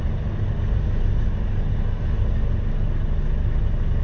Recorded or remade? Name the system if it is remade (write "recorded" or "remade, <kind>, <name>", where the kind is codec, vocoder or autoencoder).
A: recorded